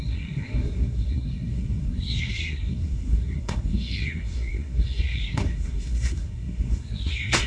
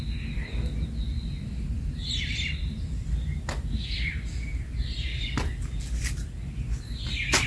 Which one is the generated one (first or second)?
first